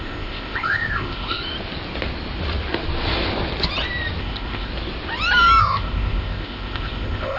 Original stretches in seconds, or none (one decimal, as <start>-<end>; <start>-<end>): 1.4-4.2; 4.7-5.6